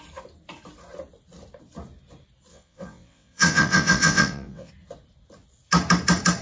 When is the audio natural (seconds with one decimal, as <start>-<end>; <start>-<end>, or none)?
0.0-2.5; 4.7-6.4